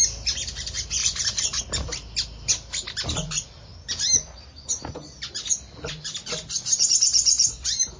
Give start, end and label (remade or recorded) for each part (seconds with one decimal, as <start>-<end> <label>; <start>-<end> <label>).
0.0-8.0 recorded

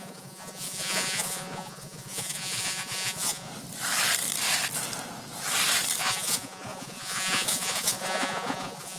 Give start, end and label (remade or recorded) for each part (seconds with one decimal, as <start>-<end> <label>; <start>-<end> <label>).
0.0-3.5 remade; 3.5-6.0 recorded; 6.0-9.0 remade

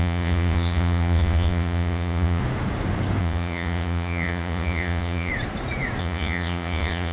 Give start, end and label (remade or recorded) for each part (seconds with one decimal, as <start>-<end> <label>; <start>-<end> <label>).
0.0-2.4 remade; 2.4-3.2 recorded; 3.2-5.3 remade; 5.3-6.0 recorded; 6.0-7.1 remade

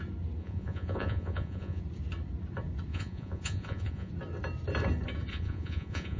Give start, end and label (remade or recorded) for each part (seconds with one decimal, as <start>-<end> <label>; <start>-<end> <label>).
0.0-0.4 recorded; 0.4-1.8 remade; 1.8-2.9 recorded; 2.9-4.1 remade; 4.1-5.3 recorded; 5.3-6.2 remade

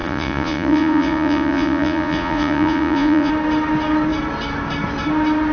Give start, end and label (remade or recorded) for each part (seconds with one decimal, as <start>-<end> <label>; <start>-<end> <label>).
0.0-3.3 remade; 3.3-5.5 recorded

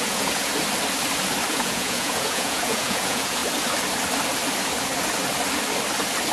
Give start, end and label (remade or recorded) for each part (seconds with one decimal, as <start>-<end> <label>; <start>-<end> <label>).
0.0-0.5 remade; 0.5-1.5 recorded; 1.5-3.4 remade; 3.4-6.3 recorded